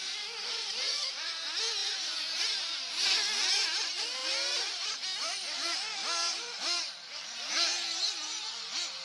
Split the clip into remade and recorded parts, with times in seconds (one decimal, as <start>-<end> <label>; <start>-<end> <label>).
0.0-9.0 recorded